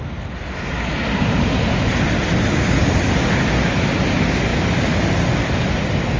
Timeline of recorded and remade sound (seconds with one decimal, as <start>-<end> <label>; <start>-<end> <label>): 0.0-6.2 recorded